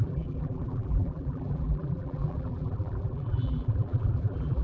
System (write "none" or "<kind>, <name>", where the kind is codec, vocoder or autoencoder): vocoder, BigVGAN v2